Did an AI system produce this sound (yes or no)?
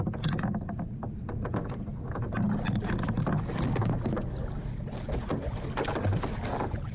no